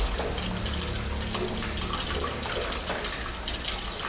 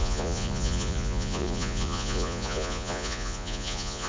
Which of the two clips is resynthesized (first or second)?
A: second